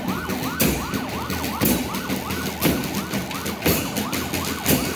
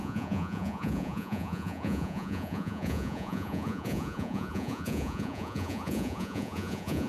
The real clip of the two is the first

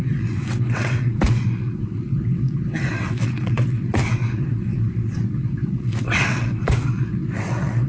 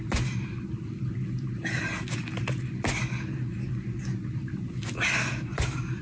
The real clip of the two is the second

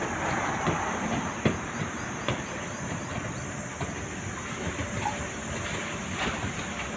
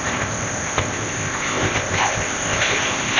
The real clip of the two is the first